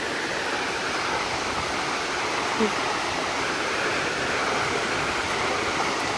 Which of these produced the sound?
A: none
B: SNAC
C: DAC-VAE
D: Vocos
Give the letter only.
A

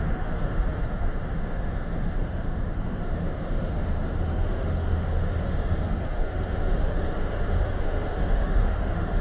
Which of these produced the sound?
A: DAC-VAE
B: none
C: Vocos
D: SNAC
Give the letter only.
A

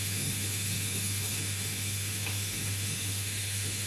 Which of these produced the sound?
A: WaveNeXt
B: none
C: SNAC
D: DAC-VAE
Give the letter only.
D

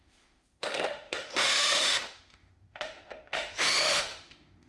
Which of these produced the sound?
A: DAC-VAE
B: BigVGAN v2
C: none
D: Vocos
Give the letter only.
A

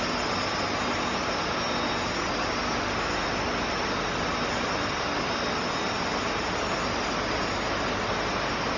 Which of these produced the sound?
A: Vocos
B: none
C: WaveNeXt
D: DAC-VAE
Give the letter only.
B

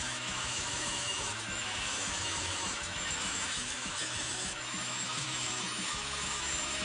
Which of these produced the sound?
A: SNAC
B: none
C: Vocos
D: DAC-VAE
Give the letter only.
D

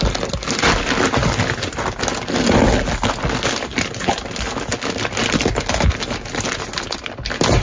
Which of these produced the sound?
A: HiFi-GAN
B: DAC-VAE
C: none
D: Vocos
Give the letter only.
C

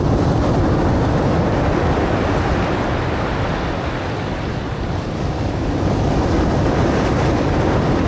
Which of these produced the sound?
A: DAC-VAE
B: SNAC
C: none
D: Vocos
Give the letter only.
C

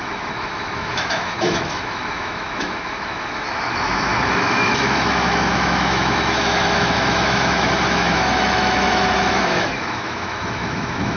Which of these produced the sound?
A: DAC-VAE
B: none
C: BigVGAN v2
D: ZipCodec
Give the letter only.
A